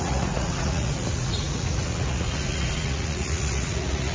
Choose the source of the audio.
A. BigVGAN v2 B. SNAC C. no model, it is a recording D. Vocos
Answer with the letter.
D